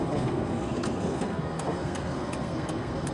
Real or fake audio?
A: fake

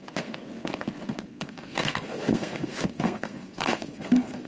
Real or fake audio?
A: fake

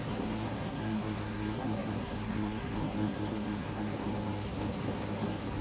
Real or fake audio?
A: fake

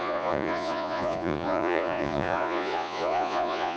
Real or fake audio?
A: fake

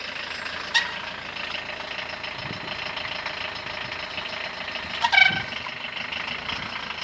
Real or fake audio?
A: real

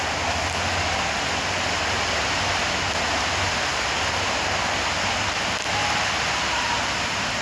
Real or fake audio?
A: real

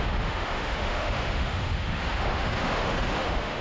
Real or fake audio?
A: fake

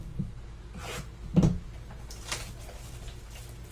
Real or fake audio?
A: real